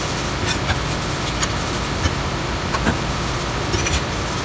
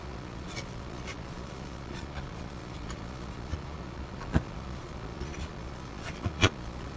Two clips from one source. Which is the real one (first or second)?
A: first